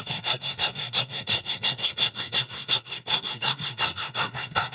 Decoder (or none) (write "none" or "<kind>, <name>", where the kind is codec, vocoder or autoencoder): codec, SNAC